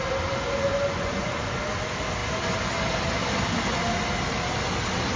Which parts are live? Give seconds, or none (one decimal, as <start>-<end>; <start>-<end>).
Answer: 0.0-0.7; 1.6-5.2